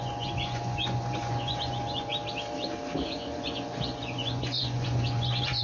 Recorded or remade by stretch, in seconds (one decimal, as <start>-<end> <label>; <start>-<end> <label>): 0.0-2.1 remade; 2.1-3.0 recorded; 3.0-5.6 remade